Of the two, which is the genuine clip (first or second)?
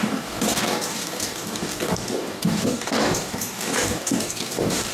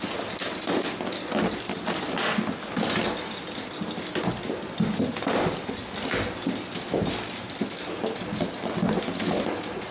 second